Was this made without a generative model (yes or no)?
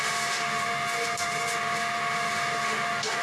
no